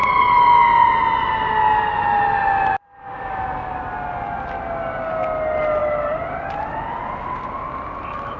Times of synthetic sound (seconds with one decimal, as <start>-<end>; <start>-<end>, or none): none